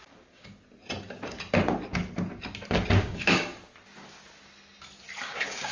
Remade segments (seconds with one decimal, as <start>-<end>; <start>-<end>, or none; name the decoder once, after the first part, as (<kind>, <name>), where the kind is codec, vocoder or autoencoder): 0.0-0.5 (codec, DAC); 3.0-3.5; 5.2-5.7